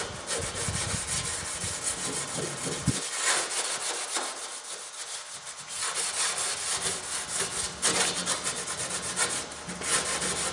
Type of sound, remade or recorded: recorded